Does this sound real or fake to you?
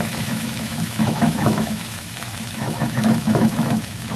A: fake